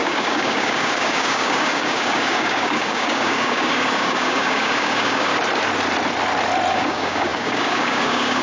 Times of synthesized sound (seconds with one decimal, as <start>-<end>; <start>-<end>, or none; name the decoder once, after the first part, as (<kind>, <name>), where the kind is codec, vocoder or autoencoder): 0.0-5.3 (codec, DAC); 6.7-8.4